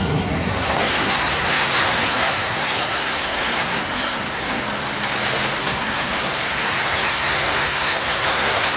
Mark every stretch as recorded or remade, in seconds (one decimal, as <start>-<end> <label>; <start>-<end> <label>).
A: 0.0-4.6 remade; 4.6-5.6 recorded; 5.6-8.8 remade